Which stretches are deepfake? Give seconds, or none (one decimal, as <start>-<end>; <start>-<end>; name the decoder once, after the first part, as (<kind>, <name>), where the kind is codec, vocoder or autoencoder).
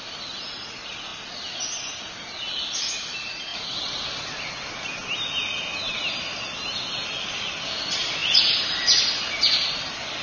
none